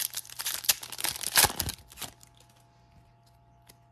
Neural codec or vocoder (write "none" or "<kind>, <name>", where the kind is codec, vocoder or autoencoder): none